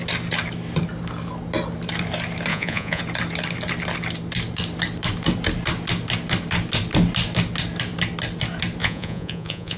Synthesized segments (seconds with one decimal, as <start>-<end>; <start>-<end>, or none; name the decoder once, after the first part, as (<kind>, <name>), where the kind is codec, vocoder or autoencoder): 2.5-3.0 (vocoder, Vocos); 8.8-9.8